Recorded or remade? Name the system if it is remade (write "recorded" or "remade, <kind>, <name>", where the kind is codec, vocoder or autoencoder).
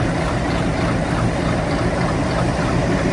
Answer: remade, vocoder, BigVGAN v2